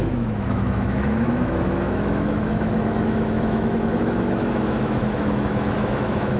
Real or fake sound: fake